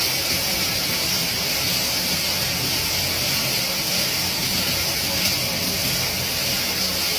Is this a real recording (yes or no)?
yes